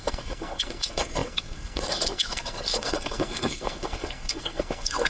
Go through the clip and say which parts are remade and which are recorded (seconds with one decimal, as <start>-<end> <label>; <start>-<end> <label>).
0.0-5.1 remade